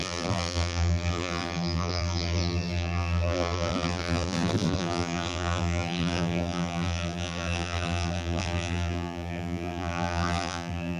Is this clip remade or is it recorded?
remade